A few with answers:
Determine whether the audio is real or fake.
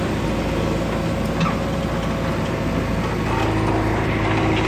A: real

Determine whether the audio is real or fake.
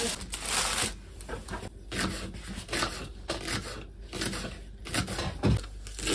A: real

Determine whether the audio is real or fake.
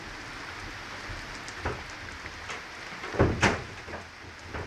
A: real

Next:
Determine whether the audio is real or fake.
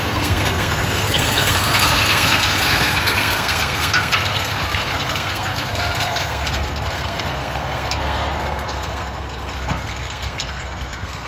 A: fake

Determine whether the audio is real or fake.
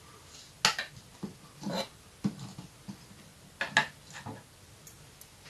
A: real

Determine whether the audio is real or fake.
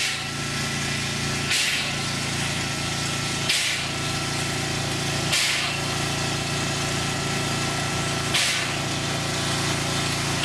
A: real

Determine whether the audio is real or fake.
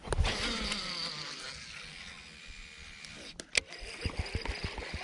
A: real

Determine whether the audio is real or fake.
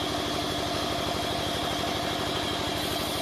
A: real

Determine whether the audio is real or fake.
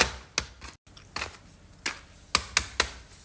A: real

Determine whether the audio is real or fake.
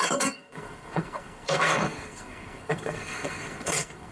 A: fake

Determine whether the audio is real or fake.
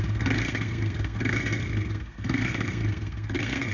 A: fake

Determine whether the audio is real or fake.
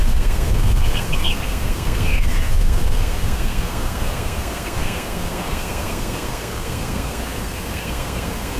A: fake